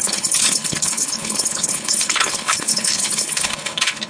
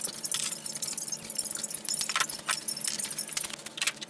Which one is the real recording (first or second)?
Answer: second